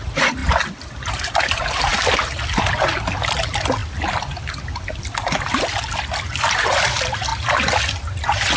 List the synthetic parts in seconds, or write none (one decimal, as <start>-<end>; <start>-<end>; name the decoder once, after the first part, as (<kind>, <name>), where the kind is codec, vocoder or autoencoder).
none